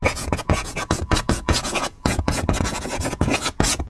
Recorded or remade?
remade